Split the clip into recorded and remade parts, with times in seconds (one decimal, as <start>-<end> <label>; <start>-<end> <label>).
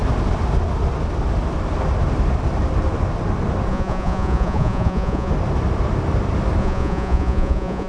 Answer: 0.0-3.7 recorded; 3.7-5.3 remade; 5.3-6.6 recorded; 6.6-7.9 remade